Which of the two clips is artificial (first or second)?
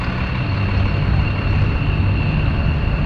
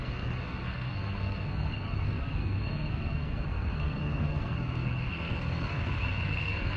second